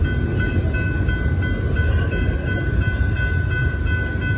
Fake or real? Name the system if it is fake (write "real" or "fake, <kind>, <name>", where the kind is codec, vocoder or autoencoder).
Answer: real